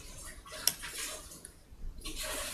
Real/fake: real